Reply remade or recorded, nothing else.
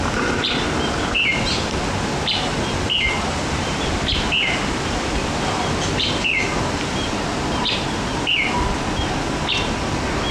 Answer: recorded